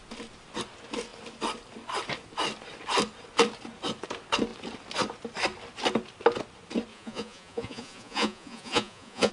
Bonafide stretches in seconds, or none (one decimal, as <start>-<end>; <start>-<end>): 0.0-6.9

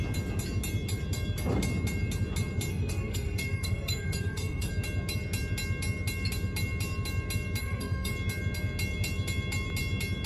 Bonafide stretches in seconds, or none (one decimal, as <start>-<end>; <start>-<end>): 0.0-2.7; 4.7-7.6; 8.1-10.3

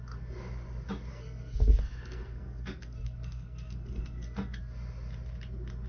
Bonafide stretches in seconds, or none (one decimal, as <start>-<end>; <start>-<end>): 0.0-1.1; 4.6-5.9